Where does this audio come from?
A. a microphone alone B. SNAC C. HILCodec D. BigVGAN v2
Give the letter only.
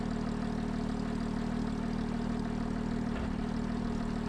A